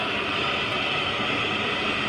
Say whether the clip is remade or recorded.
recorded